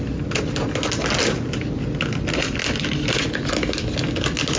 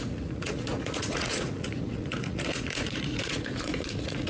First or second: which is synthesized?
second